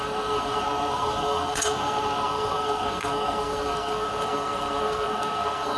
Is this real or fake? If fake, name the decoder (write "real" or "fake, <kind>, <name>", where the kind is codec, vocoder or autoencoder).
fake, codec, SNAC